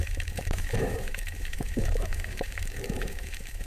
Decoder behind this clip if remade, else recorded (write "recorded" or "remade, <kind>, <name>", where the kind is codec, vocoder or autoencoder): remade, autoencoder, DAC-VAE